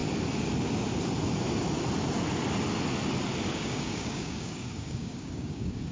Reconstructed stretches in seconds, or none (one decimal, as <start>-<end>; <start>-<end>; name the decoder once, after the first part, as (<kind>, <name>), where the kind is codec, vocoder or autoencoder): 3.5-5.9 (codec, DAC)